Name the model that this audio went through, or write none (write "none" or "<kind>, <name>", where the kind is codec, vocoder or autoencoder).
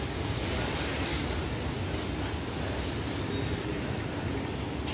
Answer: none